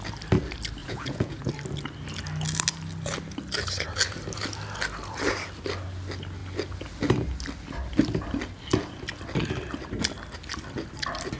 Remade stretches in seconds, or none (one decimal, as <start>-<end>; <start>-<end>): 0.8-1.5

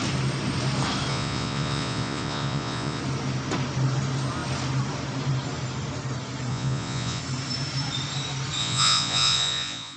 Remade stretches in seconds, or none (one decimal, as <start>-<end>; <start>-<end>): 1.1-3.0; 6.5-7.2; 8.6-10.0